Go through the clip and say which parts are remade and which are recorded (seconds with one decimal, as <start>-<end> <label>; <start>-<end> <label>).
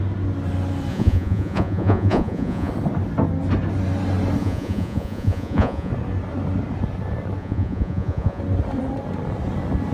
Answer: 0.0-0.9 recorded; 0.9-2.7 remade; 2.7-4.4 recorded; 4.4-5.9 remade; 5.9-7.4 recorded; 7.4-8.4 remade; 8.4-9.9 recorded